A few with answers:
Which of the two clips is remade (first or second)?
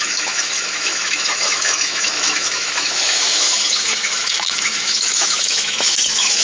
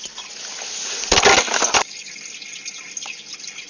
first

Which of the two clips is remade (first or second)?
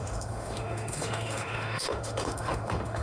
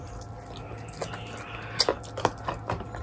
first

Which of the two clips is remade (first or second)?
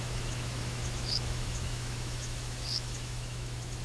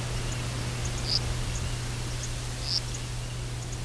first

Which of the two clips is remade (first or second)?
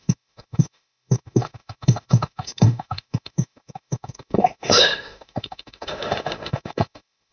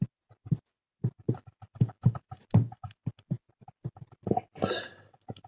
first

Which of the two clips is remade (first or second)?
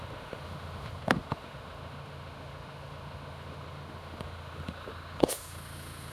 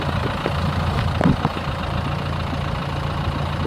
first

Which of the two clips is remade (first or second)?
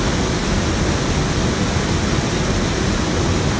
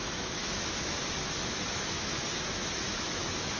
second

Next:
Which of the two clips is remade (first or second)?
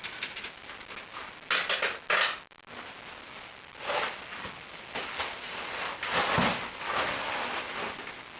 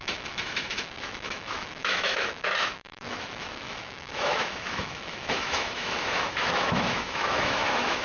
second